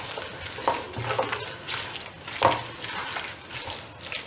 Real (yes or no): yes